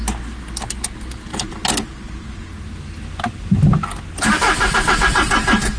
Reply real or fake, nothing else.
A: real